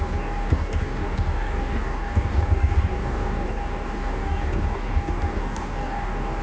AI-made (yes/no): yes